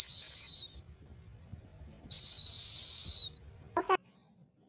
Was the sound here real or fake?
fake